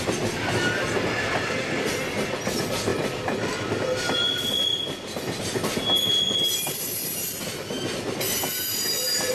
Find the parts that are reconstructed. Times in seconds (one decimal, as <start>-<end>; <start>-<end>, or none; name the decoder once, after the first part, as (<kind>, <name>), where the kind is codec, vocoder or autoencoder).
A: none